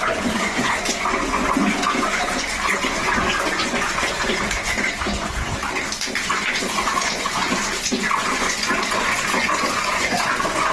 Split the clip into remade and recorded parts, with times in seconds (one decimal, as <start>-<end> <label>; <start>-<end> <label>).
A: 0.0-5.5 remade; 5.5-6.3 recorded; 6.3-10.7 remade